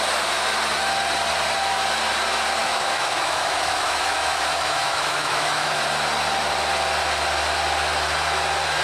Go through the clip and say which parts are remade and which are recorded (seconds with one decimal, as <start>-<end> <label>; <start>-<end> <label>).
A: 0.0-2.6 recorded; 2.6-5.8 remade; 5.8-8.8 recorded